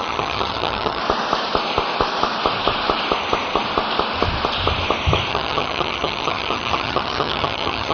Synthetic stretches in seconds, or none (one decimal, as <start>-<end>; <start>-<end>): 0.0-1.0; 5.3-7.9